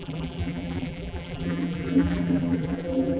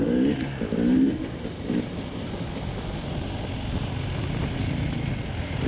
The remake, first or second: first